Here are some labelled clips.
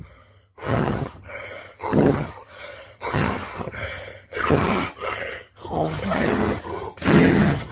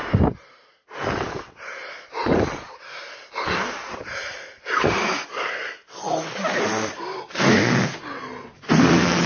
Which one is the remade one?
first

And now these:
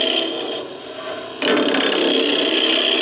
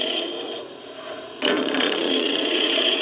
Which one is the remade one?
second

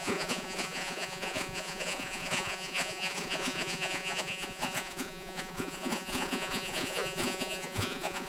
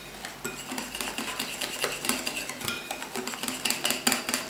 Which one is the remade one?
first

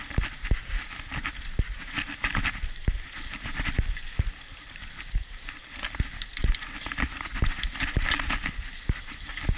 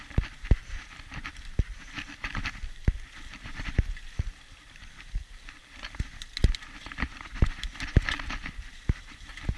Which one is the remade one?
second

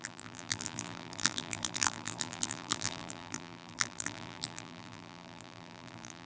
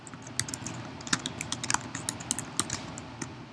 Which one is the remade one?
first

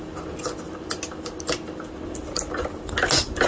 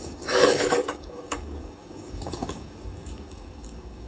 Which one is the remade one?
second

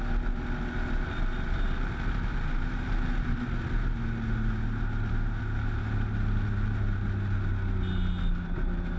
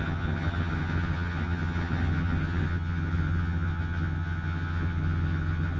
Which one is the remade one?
second